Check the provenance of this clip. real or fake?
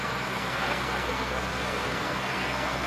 fake